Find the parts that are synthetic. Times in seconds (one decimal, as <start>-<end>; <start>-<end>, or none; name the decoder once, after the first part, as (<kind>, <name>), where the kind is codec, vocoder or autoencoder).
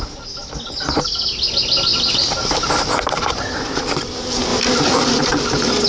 none